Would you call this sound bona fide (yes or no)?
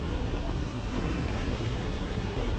no